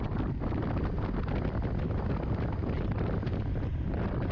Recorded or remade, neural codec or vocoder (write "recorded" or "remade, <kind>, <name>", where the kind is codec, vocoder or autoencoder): recorded